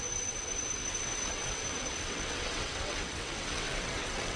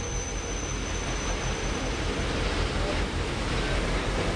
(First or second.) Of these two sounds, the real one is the second